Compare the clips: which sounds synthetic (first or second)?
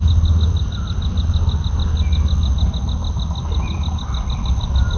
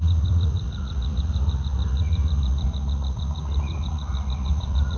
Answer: second